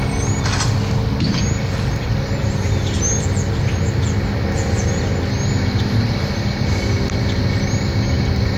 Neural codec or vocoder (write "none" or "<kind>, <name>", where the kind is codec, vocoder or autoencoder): none